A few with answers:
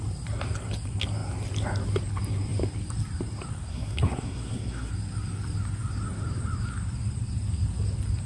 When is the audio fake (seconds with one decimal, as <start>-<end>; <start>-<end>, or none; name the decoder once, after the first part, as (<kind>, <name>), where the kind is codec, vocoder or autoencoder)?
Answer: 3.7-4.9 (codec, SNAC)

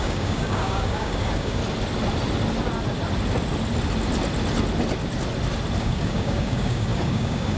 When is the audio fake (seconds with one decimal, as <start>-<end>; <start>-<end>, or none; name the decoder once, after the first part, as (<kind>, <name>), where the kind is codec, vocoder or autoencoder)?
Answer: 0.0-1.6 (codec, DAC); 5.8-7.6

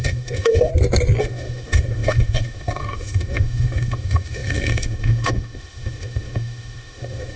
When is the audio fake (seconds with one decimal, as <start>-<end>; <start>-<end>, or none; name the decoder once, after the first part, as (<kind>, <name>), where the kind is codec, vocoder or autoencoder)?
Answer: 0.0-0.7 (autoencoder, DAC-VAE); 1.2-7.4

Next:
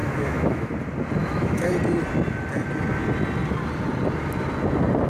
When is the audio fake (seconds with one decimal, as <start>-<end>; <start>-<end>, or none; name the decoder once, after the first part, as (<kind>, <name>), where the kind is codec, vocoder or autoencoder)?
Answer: 0.0-0.7 (autoencoder, DAC-VAE); 1.2-1.7